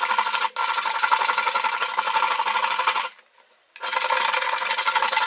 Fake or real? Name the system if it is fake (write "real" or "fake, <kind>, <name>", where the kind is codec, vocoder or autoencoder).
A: real